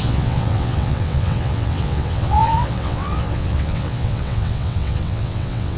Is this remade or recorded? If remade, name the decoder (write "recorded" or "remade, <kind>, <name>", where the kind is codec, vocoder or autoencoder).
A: remade, vocoder, WaveNeXt